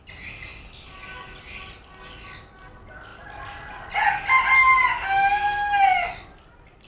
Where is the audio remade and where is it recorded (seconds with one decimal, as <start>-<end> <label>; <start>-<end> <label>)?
0.0-6.9 recorded